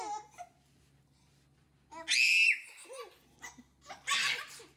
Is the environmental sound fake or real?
real